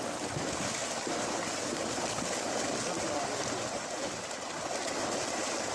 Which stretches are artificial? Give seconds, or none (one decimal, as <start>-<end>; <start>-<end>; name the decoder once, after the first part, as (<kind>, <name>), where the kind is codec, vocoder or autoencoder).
none